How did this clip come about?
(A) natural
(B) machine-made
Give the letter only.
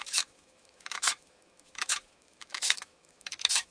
B